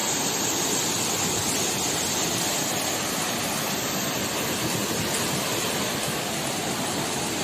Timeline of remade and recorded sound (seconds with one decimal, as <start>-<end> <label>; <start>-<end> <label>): 0.0-7.4 recorded